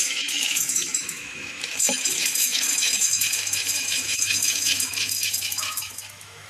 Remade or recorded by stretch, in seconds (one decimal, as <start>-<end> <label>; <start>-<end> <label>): 0.0-6.5 remade